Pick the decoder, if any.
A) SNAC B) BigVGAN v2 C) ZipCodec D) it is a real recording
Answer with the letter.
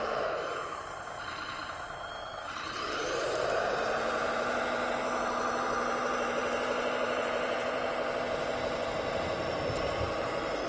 B